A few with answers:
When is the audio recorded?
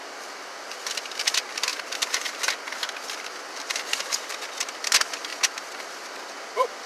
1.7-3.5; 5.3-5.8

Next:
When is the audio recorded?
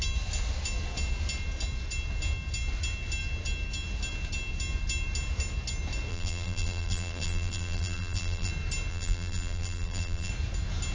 0.0-6.1; 8.5-8.9; 10.3-10.9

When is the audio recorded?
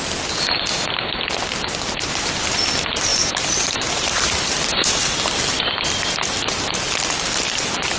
0.0-3.1; 5.3-8.0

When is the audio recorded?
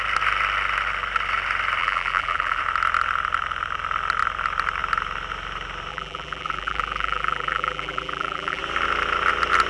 0.0-1.8; 2.6-5.9; 8.6-9.7